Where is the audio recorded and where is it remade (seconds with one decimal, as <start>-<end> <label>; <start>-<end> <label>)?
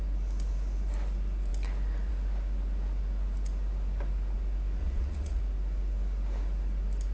0.0-4.8 recorded; 4.8-5.4 remade; 5.4-7.1 recorded